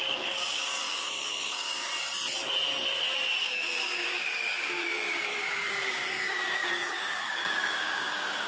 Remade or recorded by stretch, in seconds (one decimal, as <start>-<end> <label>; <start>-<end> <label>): 0.0-1.9 remade; 1.9-3.4 recorded; 3.4-8.5 remade